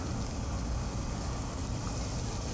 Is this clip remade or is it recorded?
recorded